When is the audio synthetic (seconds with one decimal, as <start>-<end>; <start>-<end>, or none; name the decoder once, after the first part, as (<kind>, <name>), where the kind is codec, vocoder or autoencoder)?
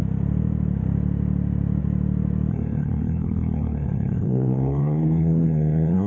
2.5-6.1 (codec, SNAC)